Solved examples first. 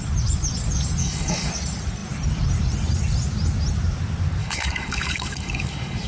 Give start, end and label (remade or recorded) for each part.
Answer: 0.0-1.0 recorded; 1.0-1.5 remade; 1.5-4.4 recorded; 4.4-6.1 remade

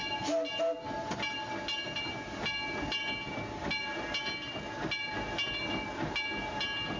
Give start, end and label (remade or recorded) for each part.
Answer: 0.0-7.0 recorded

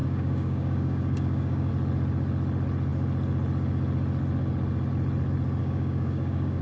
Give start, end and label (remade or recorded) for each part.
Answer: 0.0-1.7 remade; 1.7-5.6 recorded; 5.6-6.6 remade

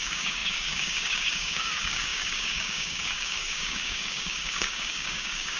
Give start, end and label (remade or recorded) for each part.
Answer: 0.0-5.6 remade

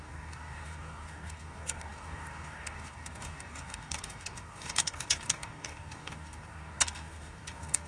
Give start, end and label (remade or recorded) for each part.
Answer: 0.0-7.9 remade